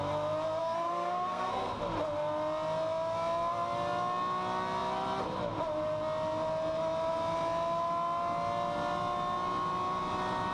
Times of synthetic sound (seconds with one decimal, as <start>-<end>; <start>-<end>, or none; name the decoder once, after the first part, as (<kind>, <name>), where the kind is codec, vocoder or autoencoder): 0.6-1.8 (codec, SNAC)